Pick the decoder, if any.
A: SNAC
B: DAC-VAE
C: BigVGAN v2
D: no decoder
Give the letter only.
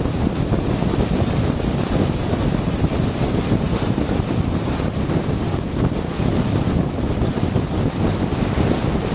D